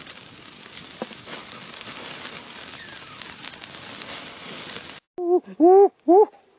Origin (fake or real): real